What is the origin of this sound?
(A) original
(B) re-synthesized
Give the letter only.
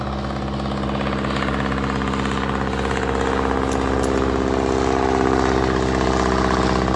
A